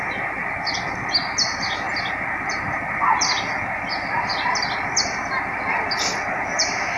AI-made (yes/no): no